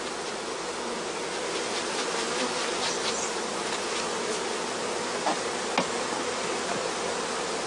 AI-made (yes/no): no